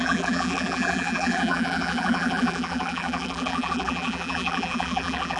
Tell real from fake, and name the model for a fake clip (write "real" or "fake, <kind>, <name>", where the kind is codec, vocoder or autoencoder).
fake, vocoder, BigVGAN v2